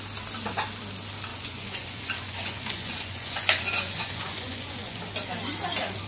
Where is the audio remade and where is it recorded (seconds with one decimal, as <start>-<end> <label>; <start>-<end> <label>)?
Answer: 0.0-1.3 recorded; 1.3-5.0 remade; 5.0-6.1 recorded